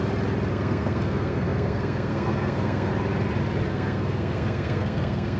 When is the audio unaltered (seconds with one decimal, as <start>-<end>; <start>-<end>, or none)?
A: 0.0-0.5; 2.9-3.7